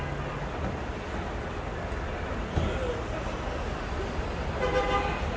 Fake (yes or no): no